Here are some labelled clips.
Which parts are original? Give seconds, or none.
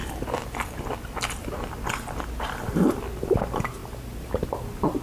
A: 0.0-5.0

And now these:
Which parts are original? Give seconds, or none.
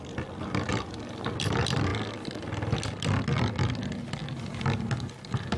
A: 1.9-3.8; 4.2-5.1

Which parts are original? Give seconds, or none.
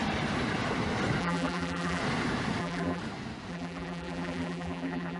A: 0.0-1.2; 2.0-2.6; 3.0-3.5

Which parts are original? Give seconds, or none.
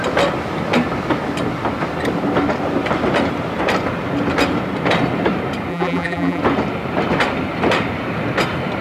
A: 0.0-5.7; 6.4-8.8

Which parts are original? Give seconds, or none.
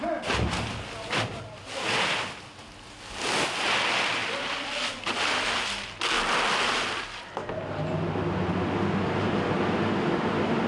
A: 0.0-10.7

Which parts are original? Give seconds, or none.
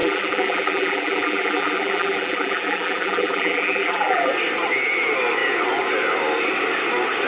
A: 4.3-7.3